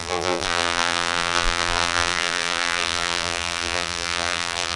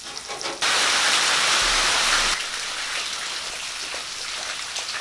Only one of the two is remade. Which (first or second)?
first